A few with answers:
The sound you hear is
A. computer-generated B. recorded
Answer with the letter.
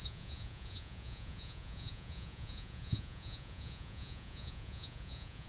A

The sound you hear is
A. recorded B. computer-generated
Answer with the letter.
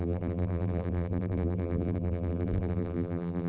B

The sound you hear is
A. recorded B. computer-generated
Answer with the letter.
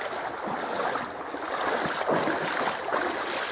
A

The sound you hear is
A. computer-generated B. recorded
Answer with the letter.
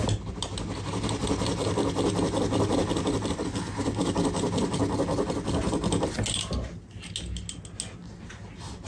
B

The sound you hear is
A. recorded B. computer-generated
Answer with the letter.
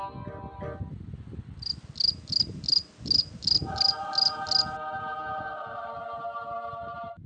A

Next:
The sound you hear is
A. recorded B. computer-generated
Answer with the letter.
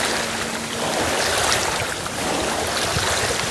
A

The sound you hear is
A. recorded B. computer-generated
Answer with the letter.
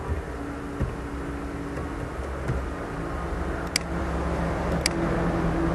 A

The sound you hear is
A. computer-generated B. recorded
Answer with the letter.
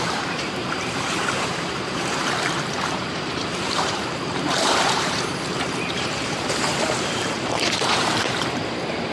A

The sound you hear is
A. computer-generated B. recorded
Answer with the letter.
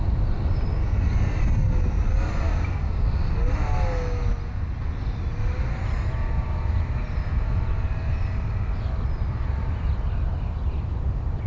B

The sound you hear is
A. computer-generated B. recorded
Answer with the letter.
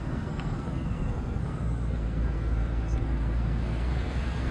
A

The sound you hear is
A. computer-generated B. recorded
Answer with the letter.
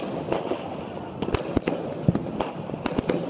B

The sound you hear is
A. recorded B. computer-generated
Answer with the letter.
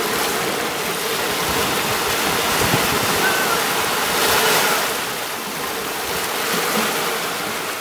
B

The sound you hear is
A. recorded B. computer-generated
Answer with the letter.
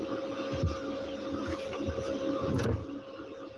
A